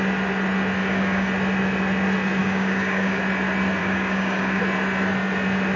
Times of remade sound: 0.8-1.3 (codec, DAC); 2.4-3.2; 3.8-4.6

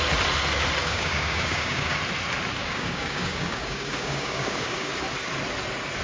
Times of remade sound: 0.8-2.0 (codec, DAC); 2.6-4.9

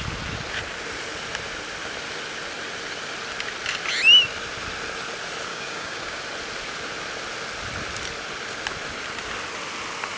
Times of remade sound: 5.5-6.2 (codec, DAC)

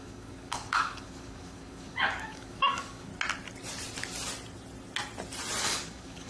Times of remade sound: 0.0-3.1 (codec, DAC); 5.6-6.3

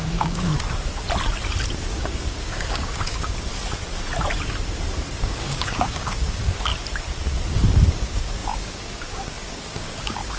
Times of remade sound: 0.0-0.5 (codec, DAC); 1.9-3.5; 5.2-6.7; 7.9-10.4